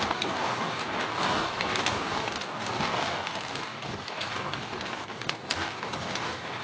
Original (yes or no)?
no